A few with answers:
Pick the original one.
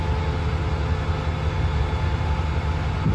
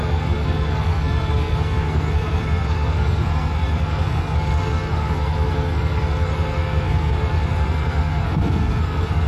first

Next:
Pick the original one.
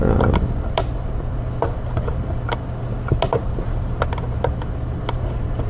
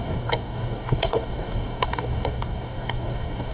first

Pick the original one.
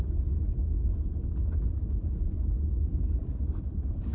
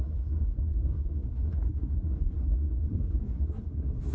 first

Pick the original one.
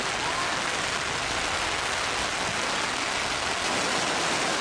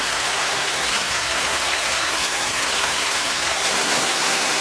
first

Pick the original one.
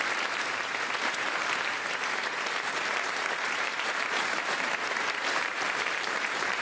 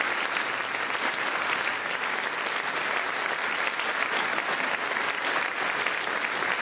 second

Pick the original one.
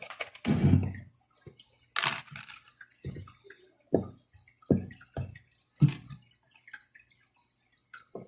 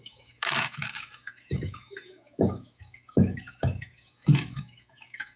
first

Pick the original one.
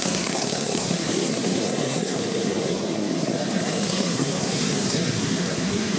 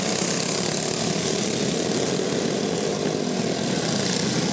second